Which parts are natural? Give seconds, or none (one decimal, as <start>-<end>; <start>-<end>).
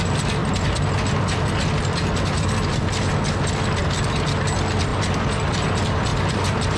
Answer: 0.0-6.8